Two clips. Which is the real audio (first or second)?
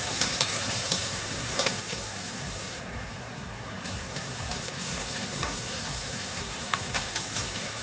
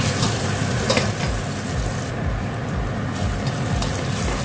second